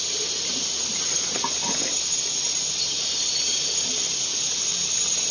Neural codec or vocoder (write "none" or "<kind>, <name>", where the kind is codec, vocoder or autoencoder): none